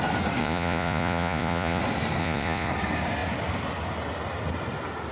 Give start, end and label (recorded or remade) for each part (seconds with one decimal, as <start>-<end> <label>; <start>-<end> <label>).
0.0-0.4 recorded; 0.4-1.8 remade; 1.8-2.2 recorded; 2.2-2.7 remade; 2.7-5.1 recorded